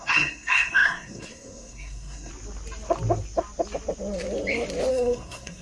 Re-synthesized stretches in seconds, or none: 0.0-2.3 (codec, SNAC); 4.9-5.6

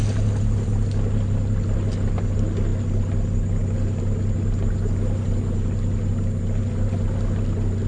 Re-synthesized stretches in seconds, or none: none

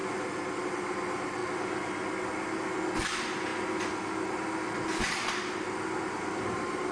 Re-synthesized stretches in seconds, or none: none

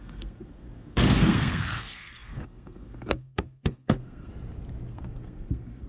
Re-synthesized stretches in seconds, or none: 0.0-4.3 (codec, SNAC); 4.9-5.9

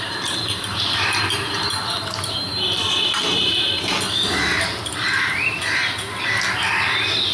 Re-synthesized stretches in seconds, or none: 0.4-3.8 (vocoder, BigVGAN v2); 4.5-6.2

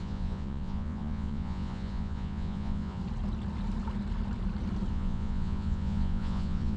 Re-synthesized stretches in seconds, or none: 0.0-3.0 (vocoder, Vocos); 4.9-6.8

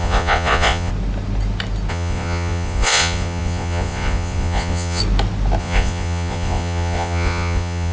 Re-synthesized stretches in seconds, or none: 0.0-0.9 (vocoder, Vocos); 1.9-5.0; 5.6-7.9